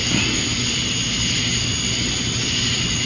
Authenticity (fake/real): real